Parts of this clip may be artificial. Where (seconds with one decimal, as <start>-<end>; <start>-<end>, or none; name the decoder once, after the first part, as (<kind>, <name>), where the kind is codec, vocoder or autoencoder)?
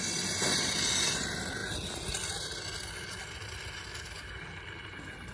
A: none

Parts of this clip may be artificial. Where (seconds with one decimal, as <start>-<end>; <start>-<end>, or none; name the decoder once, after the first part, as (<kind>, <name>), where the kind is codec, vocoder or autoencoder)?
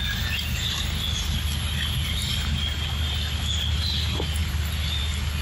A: none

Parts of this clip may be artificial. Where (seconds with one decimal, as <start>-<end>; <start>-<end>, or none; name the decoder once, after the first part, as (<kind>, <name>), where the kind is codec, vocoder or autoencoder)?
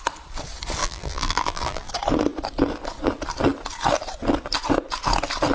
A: 0.8-1.9 (vocoder, BigVGAN v2)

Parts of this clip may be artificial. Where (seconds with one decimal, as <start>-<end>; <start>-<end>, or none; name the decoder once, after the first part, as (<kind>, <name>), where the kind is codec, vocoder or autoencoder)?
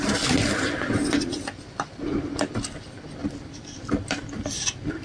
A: 3.2-4.4 (vocoder, BigVGAN v2)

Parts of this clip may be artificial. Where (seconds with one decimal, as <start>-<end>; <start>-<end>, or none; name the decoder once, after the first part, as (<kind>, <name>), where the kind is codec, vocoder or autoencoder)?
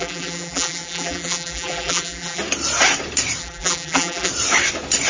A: 0.0-2.4 (vocoder, BigVGAN v2); 3.4-4.3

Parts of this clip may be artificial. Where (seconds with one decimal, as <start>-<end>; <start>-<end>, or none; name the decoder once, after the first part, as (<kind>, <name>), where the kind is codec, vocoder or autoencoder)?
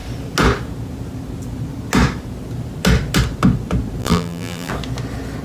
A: 4.0-4.7 (vocoder, BigVGAN v2)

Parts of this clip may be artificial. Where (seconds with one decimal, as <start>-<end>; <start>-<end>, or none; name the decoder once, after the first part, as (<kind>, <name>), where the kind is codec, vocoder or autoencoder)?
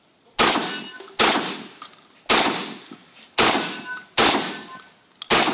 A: 3.0-3.8 (vocoder, BigVGAN v2)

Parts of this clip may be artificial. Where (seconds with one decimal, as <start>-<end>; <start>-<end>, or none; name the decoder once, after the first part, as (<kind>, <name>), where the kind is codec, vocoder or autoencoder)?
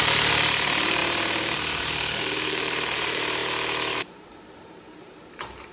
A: 0.0-3.4 (vocoder, BigVGAN v2); 3.9-5.7